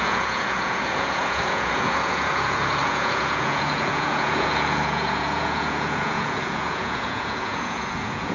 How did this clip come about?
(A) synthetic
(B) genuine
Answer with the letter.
A